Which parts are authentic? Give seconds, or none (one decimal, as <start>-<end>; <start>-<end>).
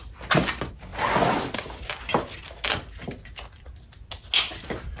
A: 0.0-5.0